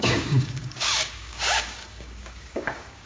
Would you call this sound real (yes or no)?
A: no